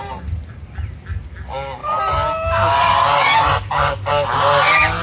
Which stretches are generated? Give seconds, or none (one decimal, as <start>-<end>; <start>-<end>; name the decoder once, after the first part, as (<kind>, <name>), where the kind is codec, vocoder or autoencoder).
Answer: none